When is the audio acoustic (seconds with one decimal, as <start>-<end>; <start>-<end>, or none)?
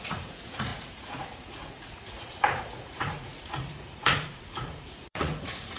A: none